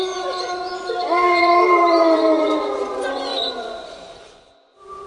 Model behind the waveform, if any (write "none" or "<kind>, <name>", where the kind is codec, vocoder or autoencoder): vocoder, Vocos